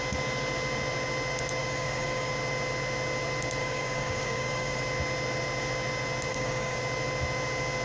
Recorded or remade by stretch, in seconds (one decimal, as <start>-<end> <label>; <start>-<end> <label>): 0.0-1.6 recorded; 1.6-2.3 remade; 2.3-3.6 recorded; 3.6-4.8 remade; 4.8-6.3 recorded; 6.3-6.8 remade; 6.8-7.8 recorded